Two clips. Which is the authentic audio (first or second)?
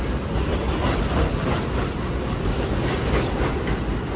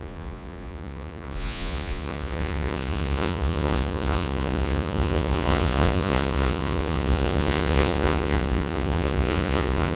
first